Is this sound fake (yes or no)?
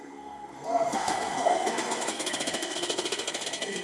yes